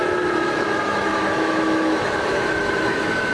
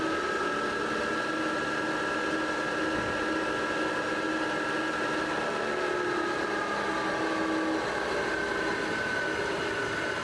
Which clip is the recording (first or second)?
second